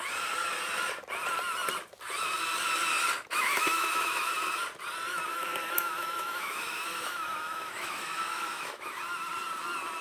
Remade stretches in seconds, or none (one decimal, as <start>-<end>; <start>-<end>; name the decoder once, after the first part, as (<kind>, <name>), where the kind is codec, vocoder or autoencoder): 3.3-4.3 (autoencoder, DAC-VAE); 5.3-9.0